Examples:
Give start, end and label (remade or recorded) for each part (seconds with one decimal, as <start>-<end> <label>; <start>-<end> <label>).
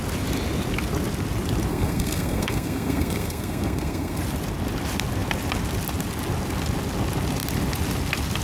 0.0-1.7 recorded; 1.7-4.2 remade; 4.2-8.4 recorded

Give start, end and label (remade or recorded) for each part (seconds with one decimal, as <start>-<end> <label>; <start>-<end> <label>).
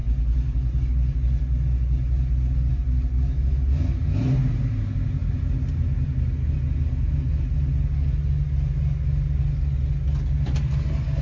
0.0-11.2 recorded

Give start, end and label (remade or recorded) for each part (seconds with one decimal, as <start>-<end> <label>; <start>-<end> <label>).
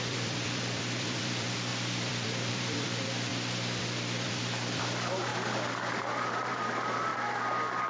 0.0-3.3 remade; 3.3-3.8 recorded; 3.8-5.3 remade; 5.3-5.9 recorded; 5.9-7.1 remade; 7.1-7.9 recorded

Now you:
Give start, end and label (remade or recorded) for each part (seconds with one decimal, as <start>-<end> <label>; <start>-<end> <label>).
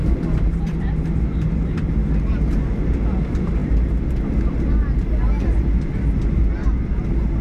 0.0-2.0 remade; 2.0-2.5 recorded; 2.5-3.6 remade; 3.6-7.4 recorded